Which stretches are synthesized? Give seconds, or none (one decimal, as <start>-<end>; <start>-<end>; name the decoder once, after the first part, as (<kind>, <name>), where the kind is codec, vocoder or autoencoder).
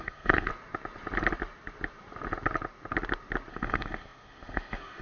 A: 0.0-0.5 (codec, SNAC); 3.5-5.0